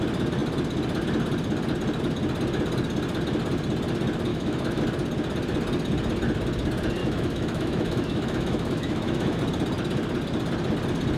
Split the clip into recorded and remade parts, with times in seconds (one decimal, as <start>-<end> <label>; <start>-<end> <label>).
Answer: 0.0-4.3 recorded; 4.3-4.8 remade; 4.8-7.0 recorded; 7.0-9.4 remade; 9.4-11.2 recorded